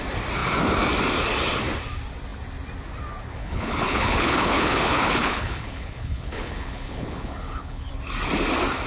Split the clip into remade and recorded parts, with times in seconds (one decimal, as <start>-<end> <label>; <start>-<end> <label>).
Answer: 0.0-3.4 recorded; 3.4-7.9 remade; 7.9-8.9 recorded